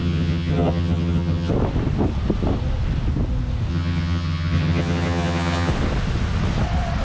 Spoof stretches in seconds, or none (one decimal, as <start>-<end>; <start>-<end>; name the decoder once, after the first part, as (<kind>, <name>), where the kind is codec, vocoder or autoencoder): 0.0-1.5 (vocoder, HiFi-GAN); 3.7-5.7